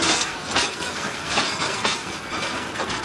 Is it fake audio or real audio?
fake